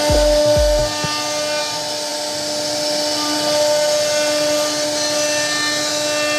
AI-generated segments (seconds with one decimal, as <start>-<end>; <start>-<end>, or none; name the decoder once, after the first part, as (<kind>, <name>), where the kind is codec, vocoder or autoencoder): none